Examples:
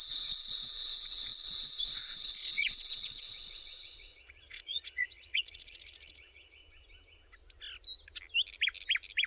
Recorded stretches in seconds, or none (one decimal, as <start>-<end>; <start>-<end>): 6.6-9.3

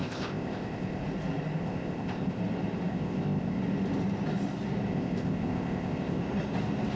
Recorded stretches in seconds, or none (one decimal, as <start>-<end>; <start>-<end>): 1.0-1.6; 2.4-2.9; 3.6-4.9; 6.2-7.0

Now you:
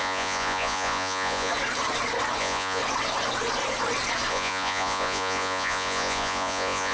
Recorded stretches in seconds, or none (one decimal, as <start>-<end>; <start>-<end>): 1.5-2.4; 2.8-4.3